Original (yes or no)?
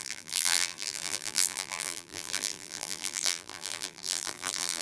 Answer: no